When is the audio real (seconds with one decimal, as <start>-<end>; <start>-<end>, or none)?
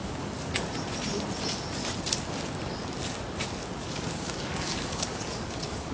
0.5-3.6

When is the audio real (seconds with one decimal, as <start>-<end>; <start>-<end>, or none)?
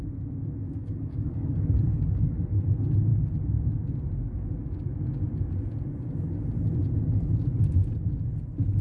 0.0-0.8; 2.6-8.8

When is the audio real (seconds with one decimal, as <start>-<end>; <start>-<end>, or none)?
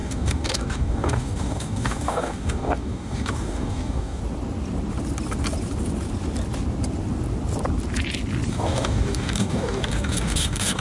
4.2-8.5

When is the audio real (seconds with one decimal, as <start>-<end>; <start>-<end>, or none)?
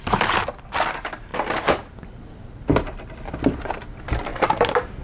0.0-5.0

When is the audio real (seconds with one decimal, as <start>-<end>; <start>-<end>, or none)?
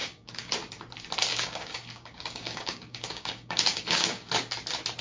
0.5-1.3; 4.3-5.0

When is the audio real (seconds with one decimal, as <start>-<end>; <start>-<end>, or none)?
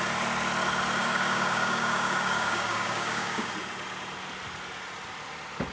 0.0-1.0; 3.5-5.7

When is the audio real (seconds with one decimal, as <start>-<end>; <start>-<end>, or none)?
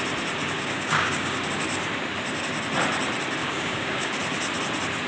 0.0-0.4; 1.4-3.4; 4.1-5.1